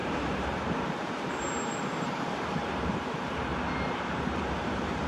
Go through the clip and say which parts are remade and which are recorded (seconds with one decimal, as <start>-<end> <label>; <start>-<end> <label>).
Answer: 0.0-3.5 remade; 3.5-5.1 recorded